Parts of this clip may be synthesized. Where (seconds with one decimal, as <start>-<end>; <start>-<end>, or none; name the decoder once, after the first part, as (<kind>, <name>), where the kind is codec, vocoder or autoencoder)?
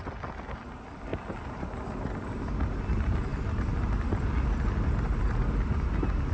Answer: none